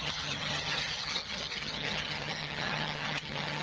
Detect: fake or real fake